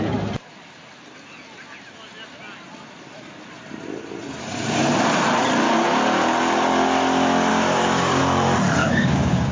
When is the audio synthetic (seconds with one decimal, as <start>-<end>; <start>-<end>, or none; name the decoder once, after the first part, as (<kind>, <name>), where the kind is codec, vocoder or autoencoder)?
7.5-8.2 (codec, DAC); 8.8-9.5